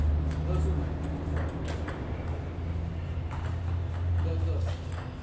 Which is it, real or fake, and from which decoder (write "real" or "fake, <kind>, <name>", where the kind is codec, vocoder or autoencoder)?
real